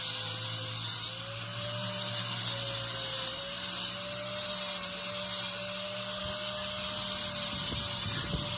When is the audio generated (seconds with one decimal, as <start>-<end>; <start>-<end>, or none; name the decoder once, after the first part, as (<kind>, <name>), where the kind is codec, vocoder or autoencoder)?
none

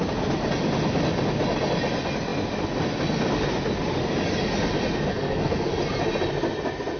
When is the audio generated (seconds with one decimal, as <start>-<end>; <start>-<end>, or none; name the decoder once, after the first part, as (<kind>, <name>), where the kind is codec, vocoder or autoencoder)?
5.1-5.7 (codec, SNAC)

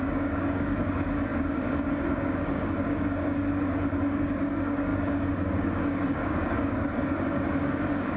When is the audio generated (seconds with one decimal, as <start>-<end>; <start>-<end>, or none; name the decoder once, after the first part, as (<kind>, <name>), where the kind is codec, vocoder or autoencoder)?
0.0-8.2 (codec, DAC)

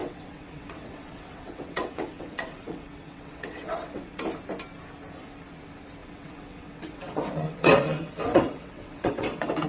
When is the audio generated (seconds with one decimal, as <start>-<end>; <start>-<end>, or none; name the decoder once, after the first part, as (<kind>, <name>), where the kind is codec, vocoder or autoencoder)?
0.0-4.2 (vocoder, WaveNeXt); 6.0-9.7

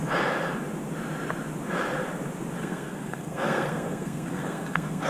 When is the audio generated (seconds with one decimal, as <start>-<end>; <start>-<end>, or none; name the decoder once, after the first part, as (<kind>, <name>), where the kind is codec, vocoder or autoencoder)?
2.6-5.1 (codec, SNAC)

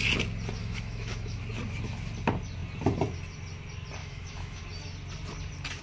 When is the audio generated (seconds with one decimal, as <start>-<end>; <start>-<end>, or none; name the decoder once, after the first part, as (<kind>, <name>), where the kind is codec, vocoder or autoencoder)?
0.6-1.4 (autoencoder, DAC-VAE); 4.0-4.6